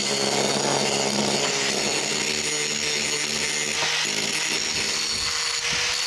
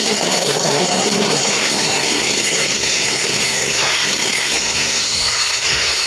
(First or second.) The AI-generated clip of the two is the second